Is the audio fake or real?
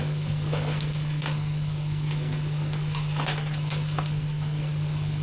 fake